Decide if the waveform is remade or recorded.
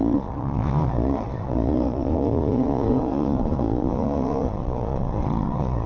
remade